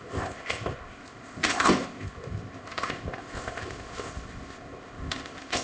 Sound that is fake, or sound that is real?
fake